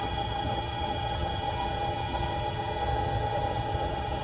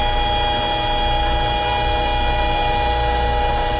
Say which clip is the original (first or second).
second